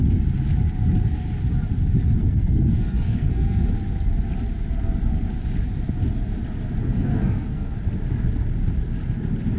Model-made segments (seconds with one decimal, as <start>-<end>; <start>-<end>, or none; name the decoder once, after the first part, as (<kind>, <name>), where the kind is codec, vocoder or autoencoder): 2.2-3.7 (codec, SNAC); 6.8-7.8